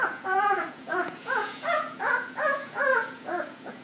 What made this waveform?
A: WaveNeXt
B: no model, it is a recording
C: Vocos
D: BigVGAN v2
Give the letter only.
C